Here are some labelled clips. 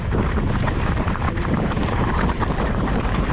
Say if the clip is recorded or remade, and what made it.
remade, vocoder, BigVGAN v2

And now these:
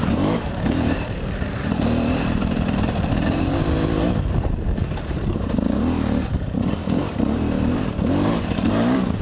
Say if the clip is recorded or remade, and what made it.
remade, vocoder, BigVGAN v2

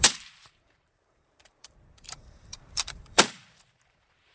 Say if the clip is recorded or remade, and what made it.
remade, vocoder, BigVGAN v2